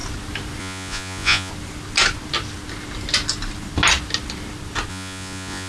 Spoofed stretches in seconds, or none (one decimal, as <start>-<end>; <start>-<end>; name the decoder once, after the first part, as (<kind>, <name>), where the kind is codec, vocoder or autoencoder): 0.6-1.5 (vocoder, Vocos); 4.9-5.7